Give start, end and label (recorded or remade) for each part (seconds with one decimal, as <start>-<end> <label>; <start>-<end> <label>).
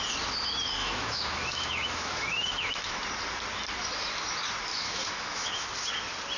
0.0-0.8 recorded; 0.8-3.0 remade; 3.0-4.7 recorded; 4.7-5.7 remade; 5.7-6.4 recorded